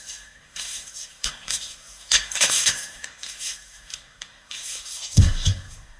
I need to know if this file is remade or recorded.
remade